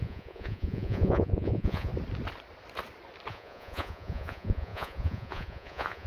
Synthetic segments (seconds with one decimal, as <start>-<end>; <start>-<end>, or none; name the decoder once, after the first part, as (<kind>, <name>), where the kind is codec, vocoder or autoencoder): 0.0-1.9 (vocoder, Vocos); 3.3-6.1